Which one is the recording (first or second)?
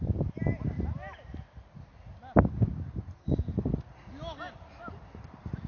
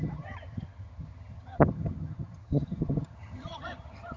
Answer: first